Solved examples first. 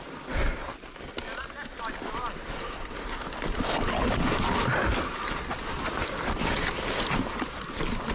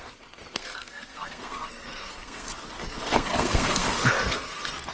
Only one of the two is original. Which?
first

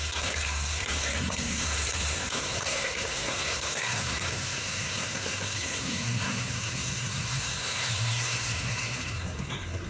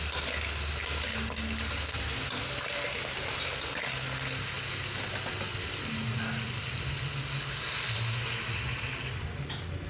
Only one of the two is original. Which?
second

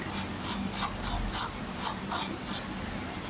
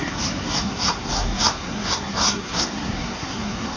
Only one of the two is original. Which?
first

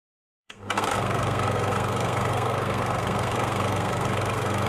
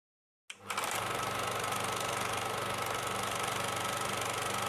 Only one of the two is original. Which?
second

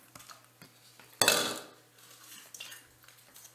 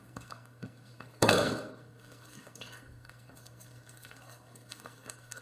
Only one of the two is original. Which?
first